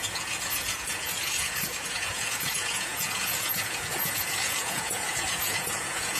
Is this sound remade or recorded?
remade